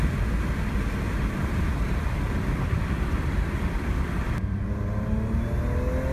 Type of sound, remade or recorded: recorded